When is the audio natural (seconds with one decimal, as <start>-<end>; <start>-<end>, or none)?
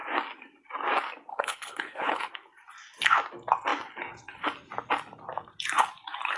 0.0-1.3; 2.3-6.4